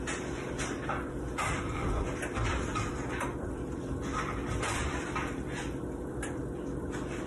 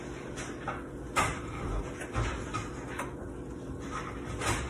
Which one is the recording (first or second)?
second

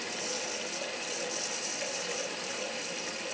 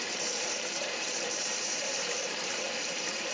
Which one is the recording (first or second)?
first